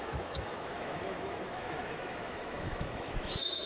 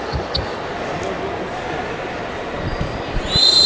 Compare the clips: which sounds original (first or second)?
second